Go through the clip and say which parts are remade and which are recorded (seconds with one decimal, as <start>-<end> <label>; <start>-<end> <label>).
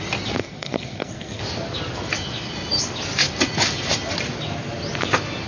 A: 0.0-0.4 recorded; 0.4-1.4 remade; 1.4-5.5 recorded